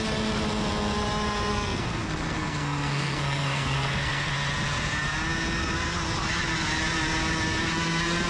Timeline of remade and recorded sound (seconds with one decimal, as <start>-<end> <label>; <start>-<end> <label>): 0.0-1.5 recorded; 1.5-4.3 remade; 4.3-8.3 recorded